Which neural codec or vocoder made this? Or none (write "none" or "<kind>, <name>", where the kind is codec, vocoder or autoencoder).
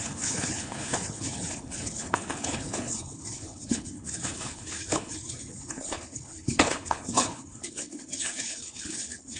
codec, HILCodec